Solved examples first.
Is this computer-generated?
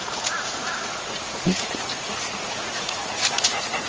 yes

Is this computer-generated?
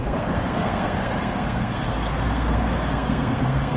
yes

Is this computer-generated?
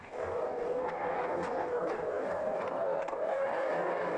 yes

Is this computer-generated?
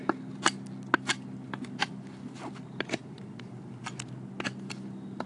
no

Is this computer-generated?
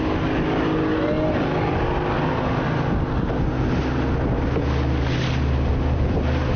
no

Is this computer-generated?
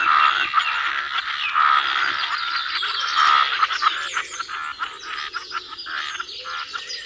no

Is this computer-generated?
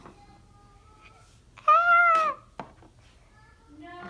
no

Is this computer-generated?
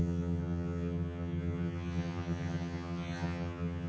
yes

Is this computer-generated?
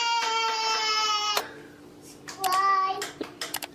no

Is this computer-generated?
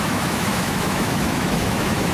yes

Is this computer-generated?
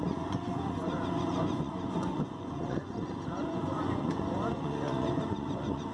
yes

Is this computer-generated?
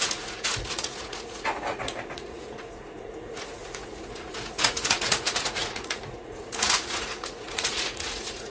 yes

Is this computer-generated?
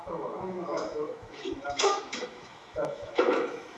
yes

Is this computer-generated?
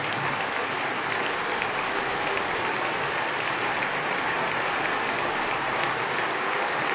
no